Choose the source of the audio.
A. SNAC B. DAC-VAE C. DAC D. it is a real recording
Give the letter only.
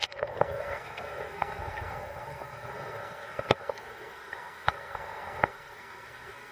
A